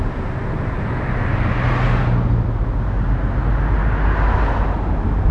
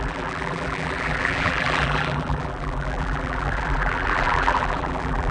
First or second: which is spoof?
second